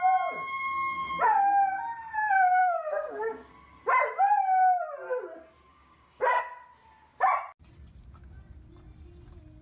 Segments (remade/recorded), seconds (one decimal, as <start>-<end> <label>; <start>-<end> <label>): 0.0-2.6 recorded; 2.6-3.5 remade; 3.5-5.7 recorded; 5.7-6.4 remade; 6.4-9.6 recorded